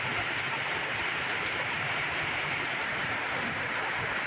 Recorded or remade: remade